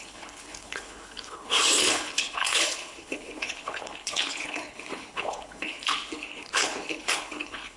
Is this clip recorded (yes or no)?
no